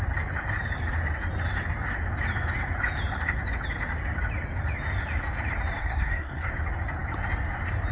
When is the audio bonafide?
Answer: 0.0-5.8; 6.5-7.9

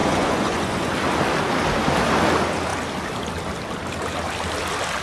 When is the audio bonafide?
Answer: 0.9-5.0

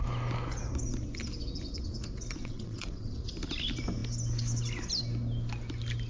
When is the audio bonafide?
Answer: 0.0-2.4; 3.2-6.1

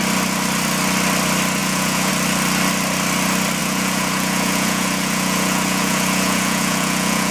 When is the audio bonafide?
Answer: 0.0-1.6; 2.1-3.6